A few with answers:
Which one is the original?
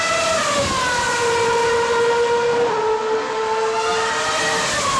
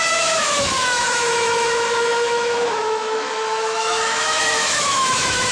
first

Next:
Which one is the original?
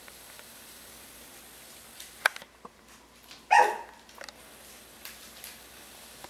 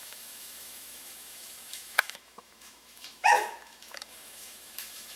first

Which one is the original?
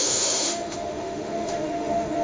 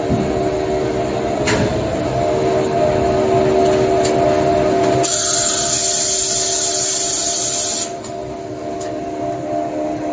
second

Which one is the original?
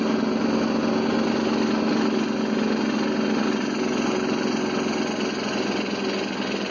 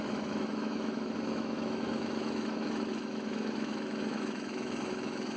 first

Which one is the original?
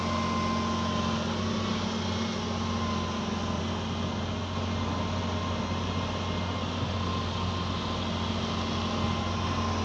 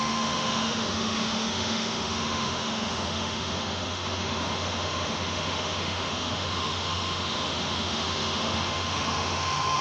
first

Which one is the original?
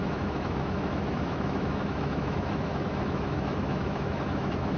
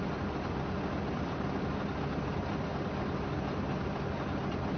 second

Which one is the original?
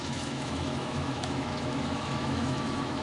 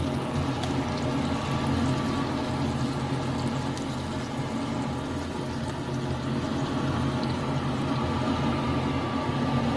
second